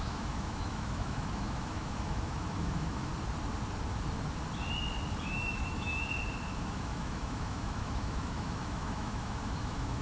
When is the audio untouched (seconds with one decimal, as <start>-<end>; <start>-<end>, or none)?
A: 3.1-5.3; 5.9-6.5